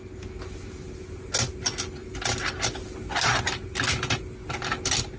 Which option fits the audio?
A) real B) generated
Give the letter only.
A